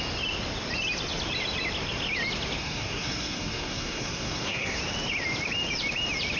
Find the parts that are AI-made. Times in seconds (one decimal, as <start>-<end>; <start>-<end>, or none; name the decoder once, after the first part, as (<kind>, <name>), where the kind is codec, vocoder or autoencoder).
2.6-4.8 (codec, SNAC)